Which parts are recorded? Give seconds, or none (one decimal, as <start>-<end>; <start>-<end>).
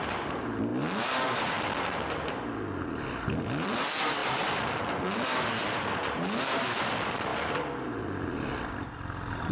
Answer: 0.7-3.3